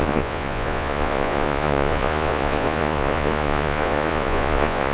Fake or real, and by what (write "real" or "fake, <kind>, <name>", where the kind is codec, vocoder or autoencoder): fake, vocoder, Vocos